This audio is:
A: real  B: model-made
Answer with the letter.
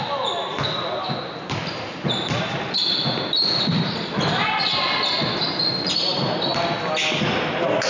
A